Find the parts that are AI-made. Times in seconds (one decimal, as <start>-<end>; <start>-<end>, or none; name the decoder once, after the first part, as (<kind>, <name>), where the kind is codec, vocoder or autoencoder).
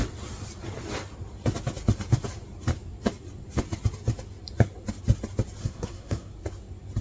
5.6-6.3 (codec, SNAC)